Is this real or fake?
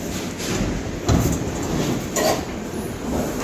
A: real